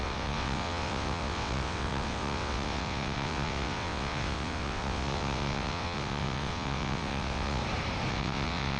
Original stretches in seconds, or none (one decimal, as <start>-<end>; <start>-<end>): 7.6-8.1